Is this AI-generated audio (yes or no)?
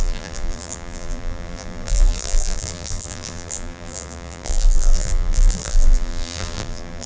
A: yes